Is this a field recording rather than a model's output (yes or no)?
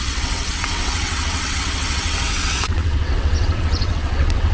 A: no